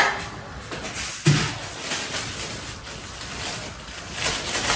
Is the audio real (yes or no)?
yes